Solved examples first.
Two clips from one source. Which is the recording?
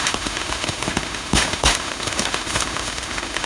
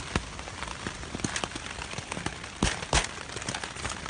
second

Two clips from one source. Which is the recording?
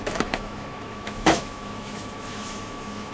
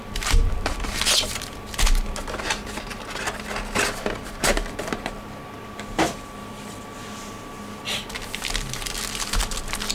second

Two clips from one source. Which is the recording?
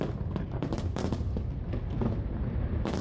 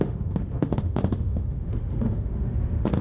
first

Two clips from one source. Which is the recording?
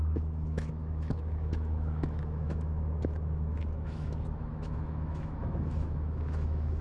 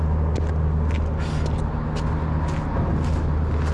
second